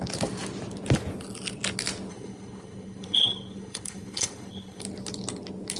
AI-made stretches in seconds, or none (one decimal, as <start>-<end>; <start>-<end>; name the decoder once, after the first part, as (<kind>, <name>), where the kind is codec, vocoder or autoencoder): 2.1-4.8 (codec, HILCodec)